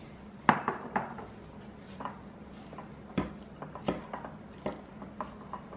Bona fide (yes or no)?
yes